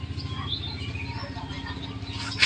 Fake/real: real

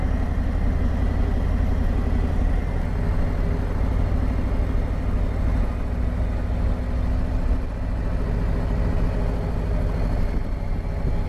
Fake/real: real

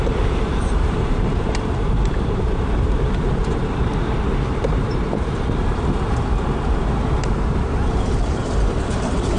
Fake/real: fake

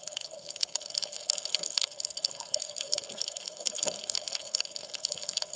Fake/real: fake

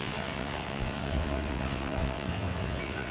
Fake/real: fake